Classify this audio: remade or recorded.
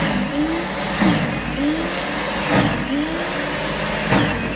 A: recorded